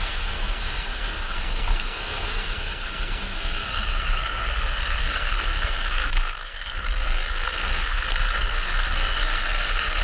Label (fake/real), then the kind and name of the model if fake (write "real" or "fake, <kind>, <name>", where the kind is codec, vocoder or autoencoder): fake, codec, SNAC